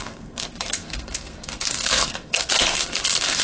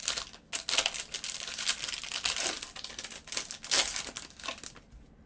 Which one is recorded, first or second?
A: second